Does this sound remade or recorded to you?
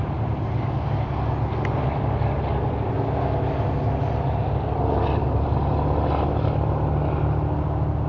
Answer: recorded